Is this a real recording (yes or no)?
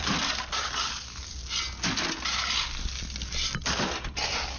yes